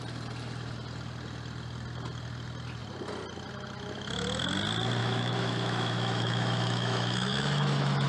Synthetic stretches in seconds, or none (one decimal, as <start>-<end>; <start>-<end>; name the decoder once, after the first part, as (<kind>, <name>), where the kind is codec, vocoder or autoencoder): 5.0-8.1 (autoencoder, DAC-VAE)